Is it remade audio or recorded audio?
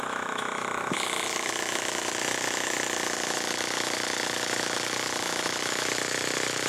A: remade